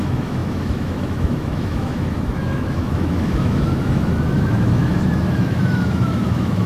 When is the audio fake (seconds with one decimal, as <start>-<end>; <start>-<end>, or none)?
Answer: 0.0-6.7